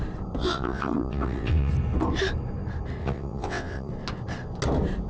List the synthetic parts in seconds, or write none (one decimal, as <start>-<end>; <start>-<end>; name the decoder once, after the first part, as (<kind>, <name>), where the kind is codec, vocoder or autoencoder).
0.4-1.7 (vocoder, WaveNeXt); 3.0-3.9